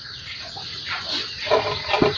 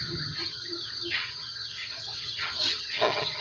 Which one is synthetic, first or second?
second